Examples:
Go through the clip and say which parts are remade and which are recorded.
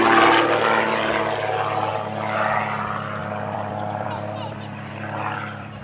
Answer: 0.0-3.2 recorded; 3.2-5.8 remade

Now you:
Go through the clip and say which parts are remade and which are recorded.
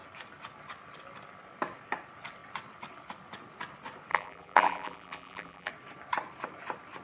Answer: 0.0-4.1 recorded; 4.1-5.7 remade; 5.7-7.0 recorded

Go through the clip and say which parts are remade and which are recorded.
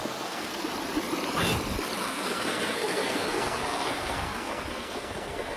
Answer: 0.0-0.6 remade; 0.6-2.0 recorded; 2.0-5.6 remade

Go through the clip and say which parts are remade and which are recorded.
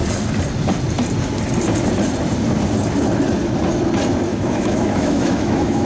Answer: 0.0-4.3 recorded; 4.3-5.9 remade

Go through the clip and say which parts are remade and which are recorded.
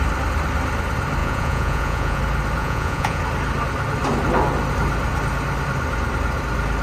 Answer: 0.0-1.2 recorded; 1.2-2.2 remade; 2.2-2.6 recorded; 2.6-3.2 remade; 3.2-6.8 recorded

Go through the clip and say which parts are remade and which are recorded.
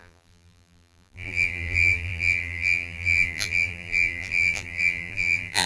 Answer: 0.0-5.7 remade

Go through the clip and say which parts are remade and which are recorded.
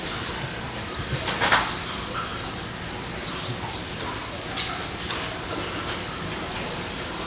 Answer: 0.0-7.3 recorded